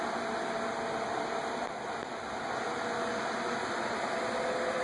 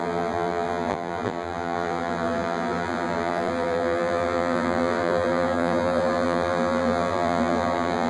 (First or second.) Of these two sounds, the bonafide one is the first